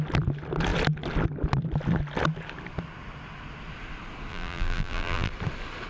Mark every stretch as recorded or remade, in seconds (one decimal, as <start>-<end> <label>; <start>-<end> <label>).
0.0-4.3 recorded; 4.3-5.3 remade; 5.3-5.9 recorded